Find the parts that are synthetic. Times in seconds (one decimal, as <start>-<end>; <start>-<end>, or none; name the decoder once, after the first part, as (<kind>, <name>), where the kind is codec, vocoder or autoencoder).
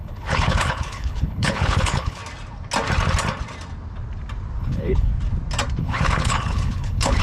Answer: 0.0-2.2 (codec, HILCodec); 4.6-5.1; 5.8-7.2